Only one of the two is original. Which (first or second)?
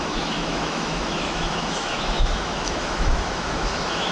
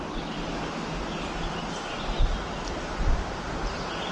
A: second